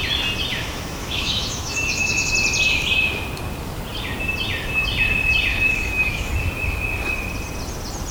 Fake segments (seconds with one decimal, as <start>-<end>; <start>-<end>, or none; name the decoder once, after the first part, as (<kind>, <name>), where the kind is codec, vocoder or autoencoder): 0.5-2.3 (autoencoder, DAC-VAE); 5.5-6.3